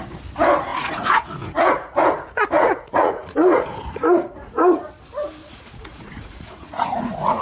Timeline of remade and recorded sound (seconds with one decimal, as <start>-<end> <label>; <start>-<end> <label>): 0.0-0.7 recorded; 0.7-4.9 remade; 4.9-5.4 recorded; 5.4-7.4 remade